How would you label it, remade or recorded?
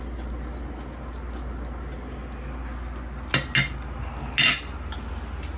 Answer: recorded